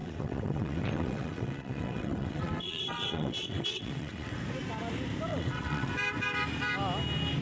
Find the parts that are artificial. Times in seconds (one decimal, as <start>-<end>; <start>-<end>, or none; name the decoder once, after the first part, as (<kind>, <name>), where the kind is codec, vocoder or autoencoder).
0.0-4.4 (vocoder, WaveNeXt); 5.3-5.9